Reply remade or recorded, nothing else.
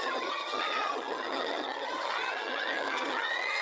remade